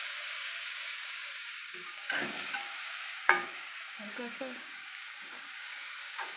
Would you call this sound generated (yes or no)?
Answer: yes